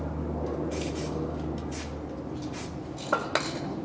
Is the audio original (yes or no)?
yes